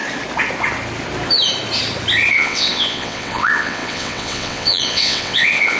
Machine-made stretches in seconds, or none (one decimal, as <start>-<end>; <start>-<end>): 2.3-5.8

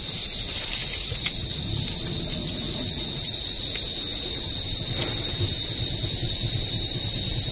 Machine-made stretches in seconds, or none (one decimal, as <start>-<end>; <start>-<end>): 0.8-1.6; 2.4-4.4

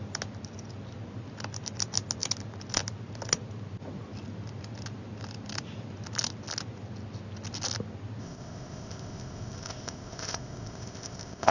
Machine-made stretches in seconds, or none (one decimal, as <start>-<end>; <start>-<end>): 8.2-11.5

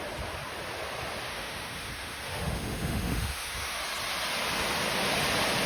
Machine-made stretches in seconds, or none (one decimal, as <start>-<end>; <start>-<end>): 1.3-3.8